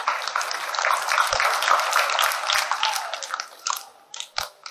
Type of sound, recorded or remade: recorded